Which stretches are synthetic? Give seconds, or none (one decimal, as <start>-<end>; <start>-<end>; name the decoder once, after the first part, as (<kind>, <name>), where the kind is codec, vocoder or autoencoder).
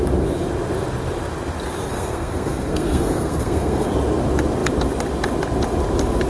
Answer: 1.9-3.9 (codec, SNAC)